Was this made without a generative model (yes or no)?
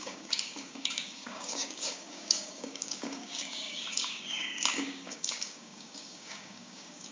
no